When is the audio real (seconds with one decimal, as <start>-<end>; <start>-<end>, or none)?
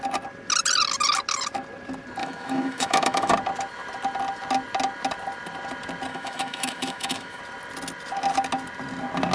0.0-2.2; 3.3-6.1; 7.4-9.3